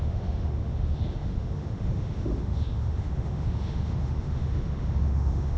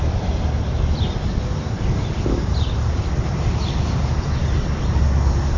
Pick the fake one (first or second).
first